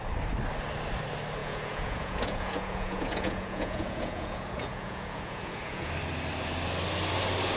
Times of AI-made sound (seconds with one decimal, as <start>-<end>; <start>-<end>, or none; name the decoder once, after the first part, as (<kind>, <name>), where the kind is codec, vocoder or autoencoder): 1.4-5.9 (vocoder, Vocos)